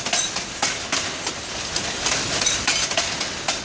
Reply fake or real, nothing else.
real